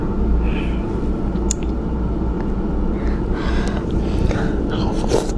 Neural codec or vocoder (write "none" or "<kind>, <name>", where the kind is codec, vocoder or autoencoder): none